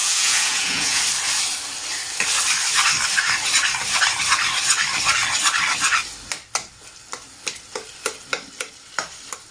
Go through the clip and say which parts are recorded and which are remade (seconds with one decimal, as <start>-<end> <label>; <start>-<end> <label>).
0.0-1.0 remade; 1.0-9.5 recorded